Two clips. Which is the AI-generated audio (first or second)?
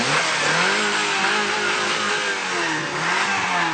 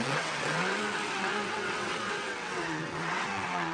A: second